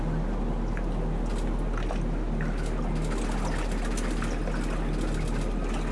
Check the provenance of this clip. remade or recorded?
recorded